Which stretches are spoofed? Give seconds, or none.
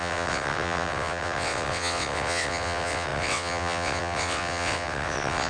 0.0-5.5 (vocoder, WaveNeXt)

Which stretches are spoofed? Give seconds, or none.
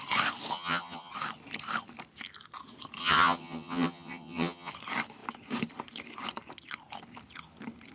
0.5-1.1 (vocoder, HiFi-GAN); 3.0-4.7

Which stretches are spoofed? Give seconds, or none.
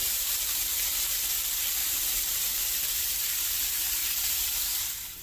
none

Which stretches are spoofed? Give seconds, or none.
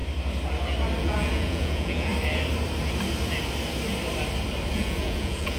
1.0-2.1 (vocoder, Vocos); 4.7-5.6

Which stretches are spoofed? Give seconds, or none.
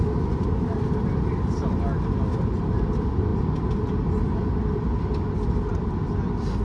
none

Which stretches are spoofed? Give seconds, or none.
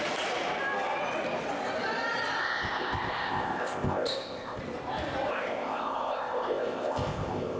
2.4-4.6 (codec, ZipCodec); 5.3-7.6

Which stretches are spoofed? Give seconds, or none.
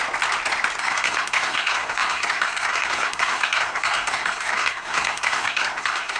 0.8-6.2 (codec, SNAC)